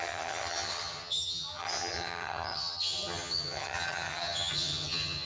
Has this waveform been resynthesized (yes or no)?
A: yes